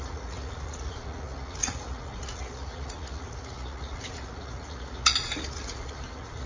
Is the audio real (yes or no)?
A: no